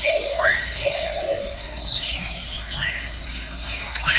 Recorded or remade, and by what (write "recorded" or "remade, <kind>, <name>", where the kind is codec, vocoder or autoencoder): remade, codec, SNAC